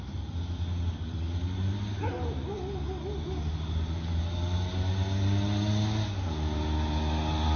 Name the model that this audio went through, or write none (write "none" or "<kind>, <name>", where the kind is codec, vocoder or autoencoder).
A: none